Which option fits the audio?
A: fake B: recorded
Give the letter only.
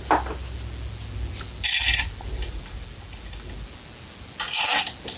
B